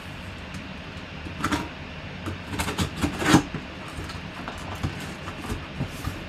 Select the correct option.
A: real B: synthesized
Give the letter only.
A